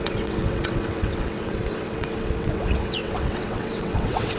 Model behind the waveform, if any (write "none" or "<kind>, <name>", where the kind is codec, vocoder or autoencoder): vocoder, WaveNeXt